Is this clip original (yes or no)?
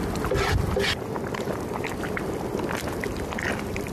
yes